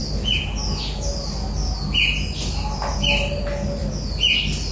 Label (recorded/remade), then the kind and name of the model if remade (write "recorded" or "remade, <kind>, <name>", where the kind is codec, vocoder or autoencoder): recorded